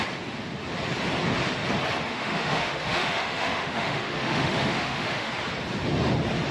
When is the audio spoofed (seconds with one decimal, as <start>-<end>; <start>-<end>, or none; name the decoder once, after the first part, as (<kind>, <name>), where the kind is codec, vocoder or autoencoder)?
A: 2.1-5.3 (autoencoder, DAC-VAE)